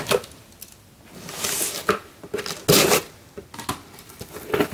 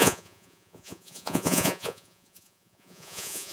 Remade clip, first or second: second